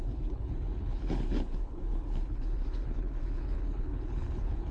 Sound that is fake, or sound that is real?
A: fake